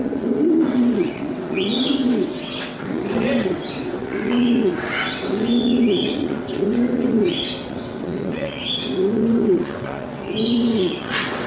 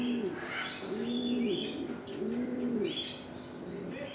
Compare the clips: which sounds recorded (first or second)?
second